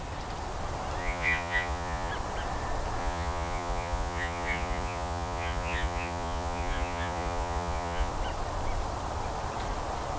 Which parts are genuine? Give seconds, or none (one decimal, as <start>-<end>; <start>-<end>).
0.0-1.0; 2.1-3.0; 8.1-10.2